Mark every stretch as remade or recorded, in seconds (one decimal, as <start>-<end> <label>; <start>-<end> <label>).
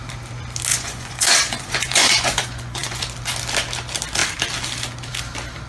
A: 0.0-0.7 recorded; 0.7-3.0 remade; 3.0-5.7 recorded